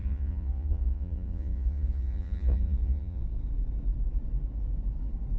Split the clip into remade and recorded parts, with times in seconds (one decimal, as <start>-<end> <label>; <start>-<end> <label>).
0.0-3.2 remade; 3.2-5.4 recorded